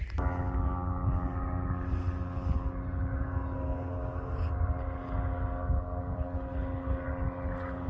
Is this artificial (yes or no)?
no